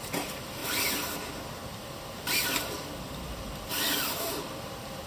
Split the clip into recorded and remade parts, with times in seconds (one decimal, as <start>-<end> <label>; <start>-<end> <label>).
0.0-5.1 recorded